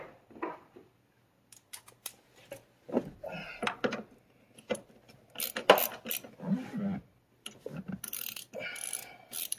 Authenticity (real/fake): real